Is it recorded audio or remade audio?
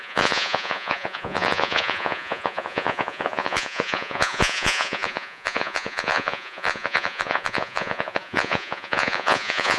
remade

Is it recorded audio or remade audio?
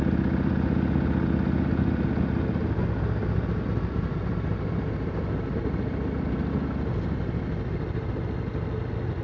recorded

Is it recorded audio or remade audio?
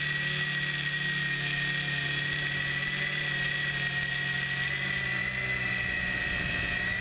recorded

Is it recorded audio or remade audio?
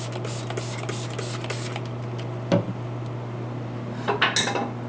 recorded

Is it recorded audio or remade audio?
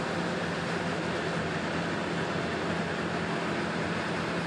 recorded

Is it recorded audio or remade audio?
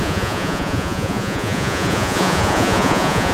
remade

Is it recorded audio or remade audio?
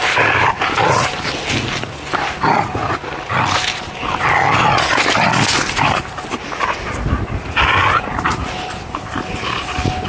recorded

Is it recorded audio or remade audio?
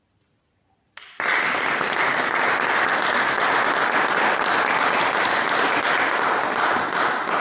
recorded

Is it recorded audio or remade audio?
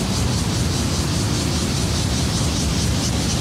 recorded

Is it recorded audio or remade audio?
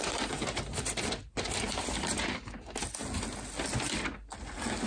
recorded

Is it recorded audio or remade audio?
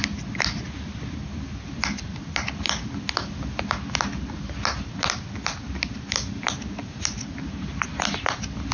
recorded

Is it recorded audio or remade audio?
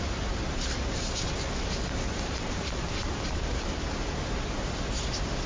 recorded